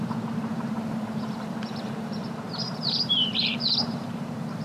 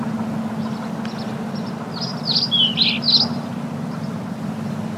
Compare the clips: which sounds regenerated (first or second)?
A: first